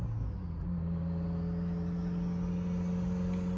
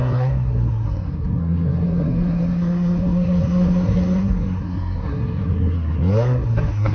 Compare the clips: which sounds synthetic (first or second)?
second